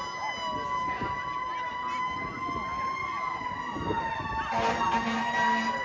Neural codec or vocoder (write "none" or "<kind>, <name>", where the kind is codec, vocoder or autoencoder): none